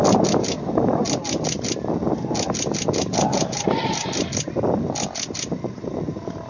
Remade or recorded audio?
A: recorded